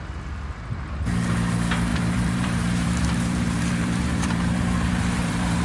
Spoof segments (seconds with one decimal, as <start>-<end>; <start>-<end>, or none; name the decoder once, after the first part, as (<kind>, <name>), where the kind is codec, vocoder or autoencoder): 1.9-5.6 (vocoder, BigVGAN v2)

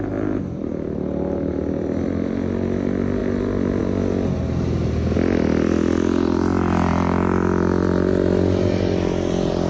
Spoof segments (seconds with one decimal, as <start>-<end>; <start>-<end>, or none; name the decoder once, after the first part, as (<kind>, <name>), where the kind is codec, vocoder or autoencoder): none

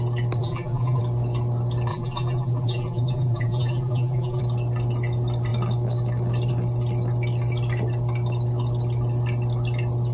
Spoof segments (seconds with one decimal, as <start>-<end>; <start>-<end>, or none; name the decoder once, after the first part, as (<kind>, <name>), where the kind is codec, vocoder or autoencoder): 0.4-1.0 (vocoder, BigVGAN v2); 1.9-4.4

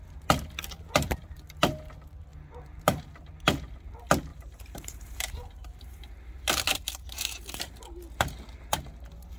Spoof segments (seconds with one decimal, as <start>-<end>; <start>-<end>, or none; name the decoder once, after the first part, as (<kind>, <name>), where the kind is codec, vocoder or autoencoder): 2.3-3.3 (vocoder, BigVGAN v2); 4.3-7.8

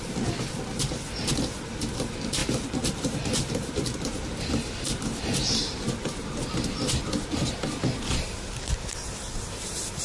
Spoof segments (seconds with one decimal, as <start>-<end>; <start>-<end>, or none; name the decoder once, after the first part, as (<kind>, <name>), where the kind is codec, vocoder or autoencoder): 2.4-4.5 (vocoder, BigVGAN v2)

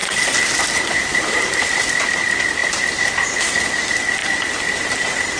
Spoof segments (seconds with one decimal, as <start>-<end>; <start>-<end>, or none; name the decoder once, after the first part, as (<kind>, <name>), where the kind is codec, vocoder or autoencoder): 1.1-1.8 (vocoder, BigVGAN v2); 4.2-5.0